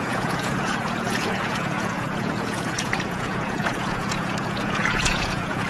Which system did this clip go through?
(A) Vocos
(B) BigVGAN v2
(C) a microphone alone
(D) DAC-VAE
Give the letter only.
A